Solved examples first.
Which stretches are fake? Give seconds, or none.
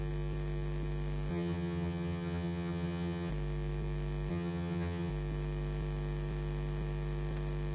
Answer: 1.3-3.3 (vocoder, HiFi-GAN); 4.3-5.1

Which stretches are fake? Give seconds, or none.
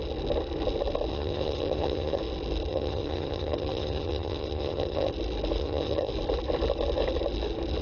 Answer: 1.1-2.2 (vocoder, HiFi-GAN); 2.7-5.1; 5.6-6.1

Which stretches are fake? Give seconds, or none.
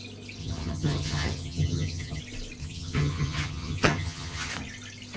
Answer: 0.4-2.2 (vocoder, HiFi-GAN); 2.6-4.5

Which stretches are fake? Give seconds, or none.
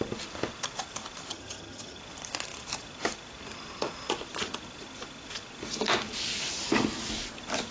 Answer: 1.3-2.0 (vocoder, HiFi-GAN)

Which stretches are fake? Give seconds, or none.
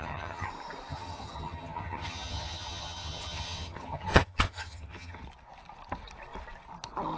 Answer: 0.0-0.5 (vocoder, HiFi-GAN); 0.9-5.2